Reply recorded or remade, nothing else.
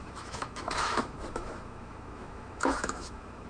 remade